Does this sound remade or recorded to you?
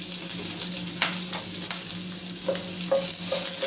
recorded